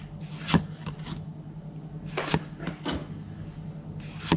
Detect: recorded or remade recorded